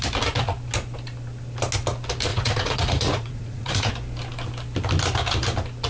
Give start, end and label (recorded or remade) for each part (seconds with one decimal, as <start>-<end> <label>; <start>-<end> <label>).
0.0-2.3 recorded; 2.3-3.9 remade; 3.9-5.9 recorded